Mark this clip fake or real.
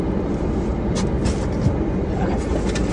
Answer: real